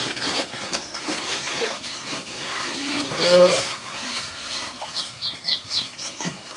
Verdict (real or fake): fake